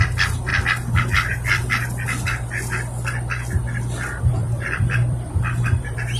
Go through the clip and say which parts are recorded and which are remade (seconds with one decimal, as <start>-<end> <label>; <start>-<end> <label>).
0.0-0.5 remade; 0.5-4.2 recorded; 4.2-6.2 remade